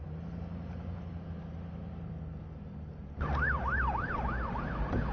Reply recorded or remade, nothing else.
recorded